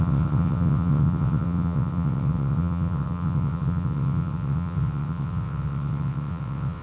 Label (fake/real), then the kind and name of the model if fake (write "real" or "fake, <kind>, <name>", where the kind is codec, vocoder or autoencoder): fake, vocoder, WaveNeXt